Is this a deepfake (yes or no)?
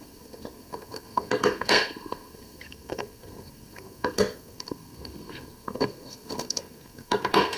yes